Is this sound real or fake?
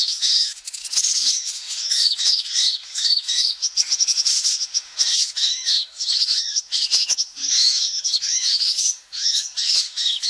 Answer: fake